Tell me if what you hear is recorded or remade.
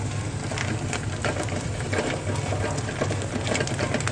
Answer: recorded